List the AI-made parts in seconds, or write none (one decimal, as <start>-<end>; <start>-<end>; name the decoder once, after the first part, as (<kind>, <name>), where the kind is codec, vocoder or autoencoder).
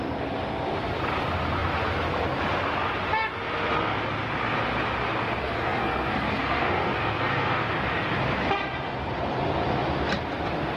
5.4-7.7 (codec, SNAC)